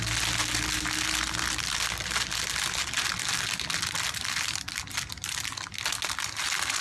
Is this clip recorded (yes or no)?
yes